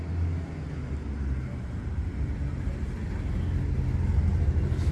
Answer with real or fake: real